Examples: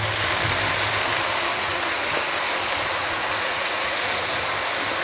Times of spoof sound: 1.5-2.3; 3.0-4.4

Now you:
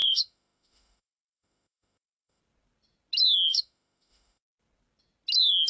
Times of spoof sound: 0.0-2.4; 3.5-4.4

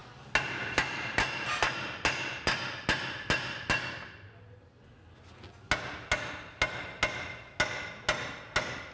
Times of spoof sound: none

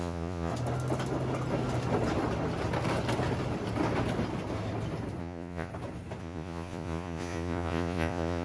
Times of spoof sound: 0.0-0.5; 5.2-5.7; 6.2-8.4

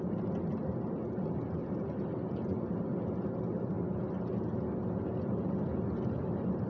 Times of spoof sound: none

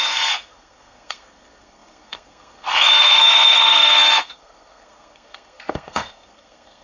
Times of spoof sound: 0.0-6.8

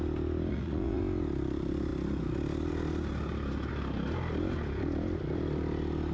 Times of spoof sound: 0.5-1.0

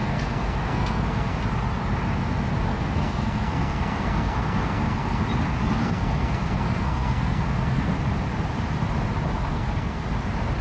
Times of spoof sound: 0.0-1.4; 2.7-5.2; 5.8-8.0; 9.5-10.0